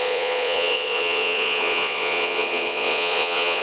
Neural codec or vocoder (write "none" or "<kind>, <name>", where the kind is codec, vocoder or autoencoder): vocoder, Vocos